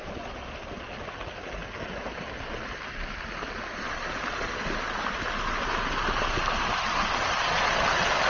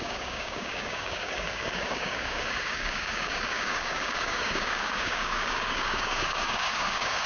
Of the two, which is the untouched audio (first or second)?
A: first